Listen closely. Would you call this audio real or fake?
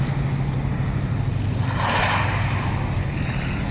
real